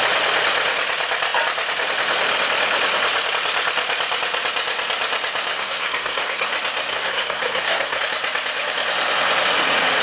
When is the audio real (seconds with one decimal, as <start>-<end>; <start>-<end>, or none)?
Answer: 0.0-5.5; 6.5-6.9; 8.0-10.0